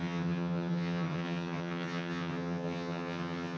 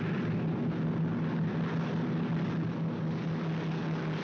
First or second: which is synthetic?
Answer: first